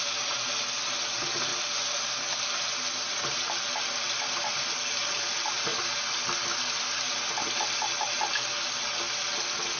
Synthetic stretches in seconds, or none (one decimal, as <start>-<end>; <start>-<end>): none